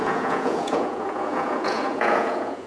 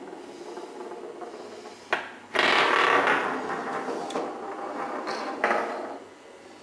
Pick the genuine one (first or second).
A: second